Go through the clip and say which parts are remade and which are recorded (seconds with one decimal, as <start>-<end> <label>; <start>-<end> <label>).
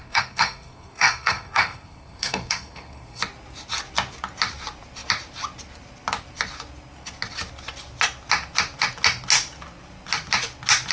0.0-3.2 remade; 3.2-10.9 recorded